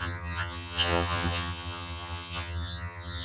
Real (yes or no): no